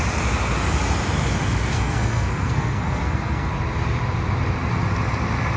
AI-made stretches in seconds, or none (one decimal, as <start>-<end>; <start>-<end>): 1.7-3.5

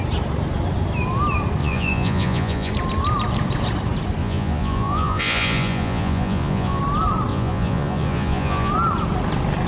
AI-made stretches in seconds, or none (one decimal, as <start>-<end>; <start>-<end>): 1.6-2.7; 4.2-6.8; 7.3-8.7

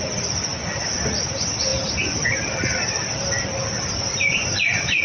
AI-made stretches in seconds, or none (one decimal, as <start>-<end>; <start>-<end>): none